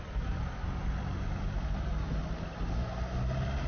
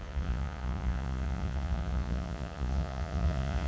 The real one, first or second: first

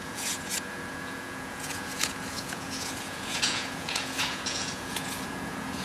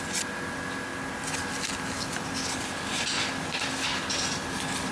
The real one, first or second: second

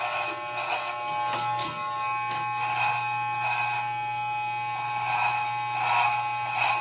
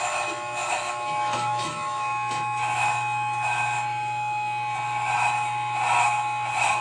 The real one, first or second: first